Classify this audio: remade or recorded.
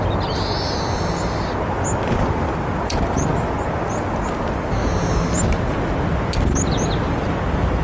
recorded